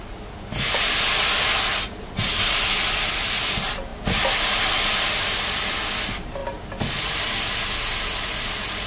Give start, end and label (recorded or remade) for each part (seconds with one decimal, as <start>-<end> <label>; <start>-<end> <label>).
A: 0.0-8.9 recorded